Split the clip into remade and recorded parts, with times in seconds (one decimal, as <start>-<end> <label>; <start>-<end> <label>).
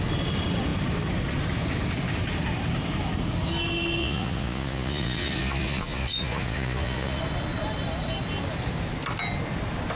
0.0-4.0 recorded; 4.0-7.2 remade; 7.2-10.0 recorded